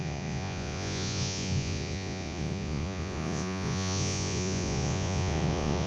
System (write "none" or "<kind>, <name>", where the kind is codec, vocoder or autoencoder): vocoder, Vocos